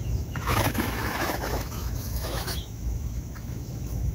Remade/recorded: remade